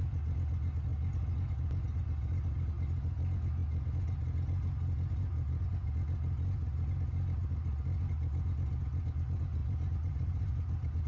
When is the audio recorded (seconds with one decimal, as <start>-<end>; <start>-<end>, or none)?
0.0-9.6; 10.5-11.1